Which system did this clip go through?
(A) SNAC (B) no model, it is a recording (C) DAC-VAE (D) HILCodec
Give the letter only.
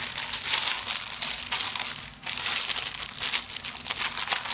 B